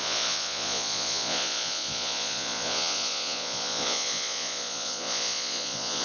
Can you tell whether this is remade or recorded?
remade